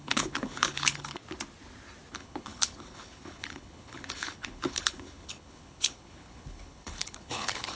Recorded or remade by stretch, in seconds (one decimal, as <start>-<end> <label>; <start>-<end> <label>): 0.0-1.2 remade; 1.2-2.1 recorded; 2.1-7.7 remade